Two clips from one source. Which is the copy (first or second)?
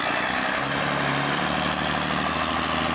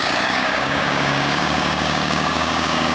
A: second